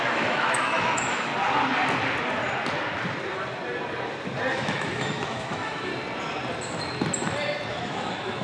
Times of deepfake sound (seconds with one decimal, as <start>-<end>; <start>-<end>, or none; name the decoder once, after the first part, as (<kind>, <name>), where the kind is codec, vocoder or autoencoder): 0.0-1.3 (autoencoder, DAC-VAE); 4.5-5.9; 7.7-8.4